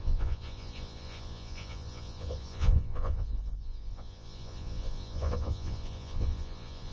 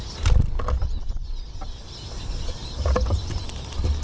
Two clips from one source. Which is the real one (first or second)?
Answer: second